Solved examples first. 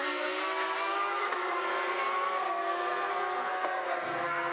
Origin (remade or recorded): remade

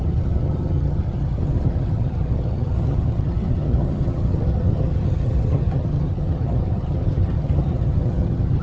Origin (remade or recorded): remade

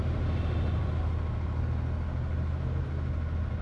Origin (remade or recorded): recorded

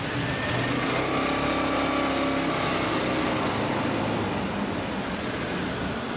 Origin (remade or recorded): recorded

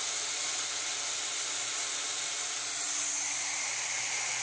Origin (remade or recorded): recorded